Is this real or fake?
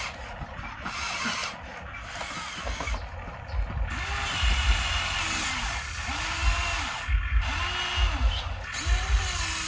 real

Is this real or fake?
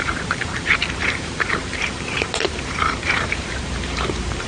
fake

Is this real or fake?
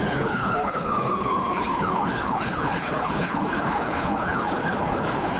fake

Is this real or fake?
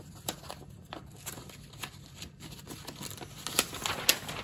real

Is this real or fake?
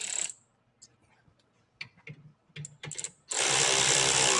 real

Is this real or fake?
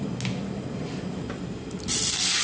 real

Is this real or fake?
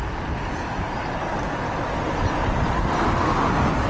real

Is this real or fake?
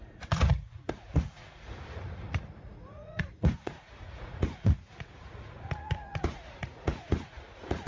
fake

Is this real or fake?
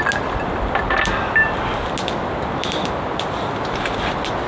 real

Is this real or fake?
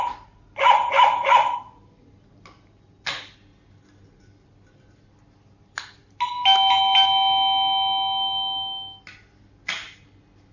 real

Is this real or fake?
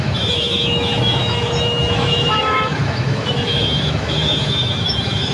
fake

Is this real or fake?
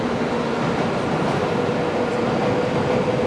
real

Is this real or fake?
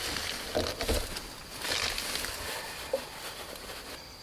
real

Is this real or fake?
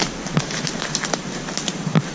fake